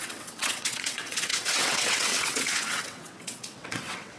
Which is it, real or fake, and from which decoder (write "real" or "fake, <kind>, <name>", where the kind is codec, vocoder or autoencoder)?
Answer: fake, vocoder, WaveNeXt